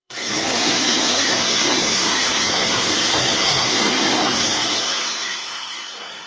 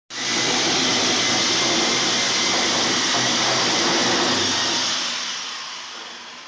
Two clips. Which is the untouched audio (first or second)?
second